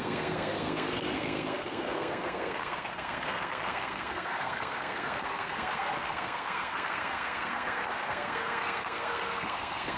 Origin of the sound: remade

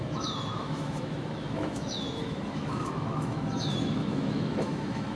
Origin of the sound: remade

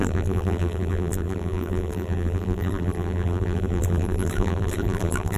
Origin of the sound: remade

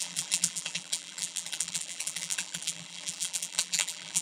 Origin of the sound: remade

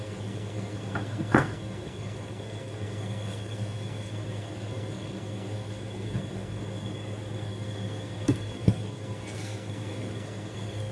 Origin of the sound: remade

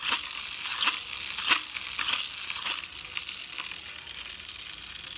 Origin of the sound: recorded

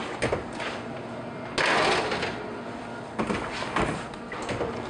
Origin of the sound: recorded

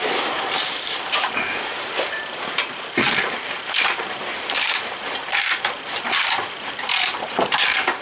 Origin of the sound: remade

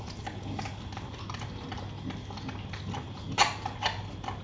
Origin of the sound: recorded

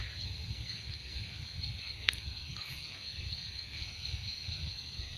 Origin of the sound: remade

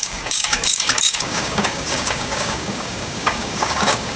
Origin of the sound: remade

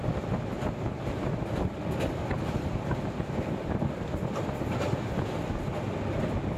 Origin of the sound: recorded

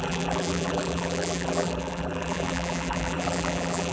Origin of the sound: remade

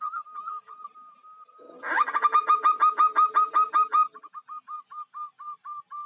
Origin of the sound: recorded